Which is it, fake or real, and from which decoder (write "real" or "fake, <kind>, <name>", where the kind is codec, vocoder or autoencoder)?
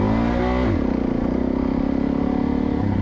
real